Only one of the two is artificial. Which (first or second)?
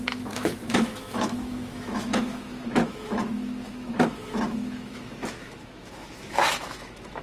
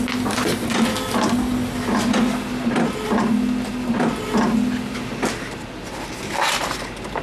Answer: first